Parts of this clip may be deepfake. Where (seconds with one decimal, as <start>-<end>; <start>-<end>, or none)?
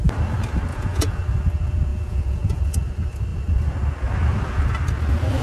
0.7-1.2; 1.9-2.6